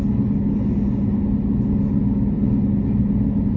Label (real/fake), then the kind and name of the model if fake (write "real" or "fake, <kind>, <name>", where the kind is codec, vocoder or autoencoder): real